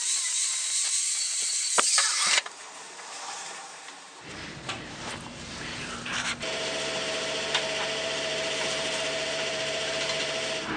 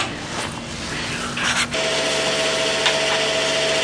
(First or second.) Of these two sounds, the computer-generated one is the first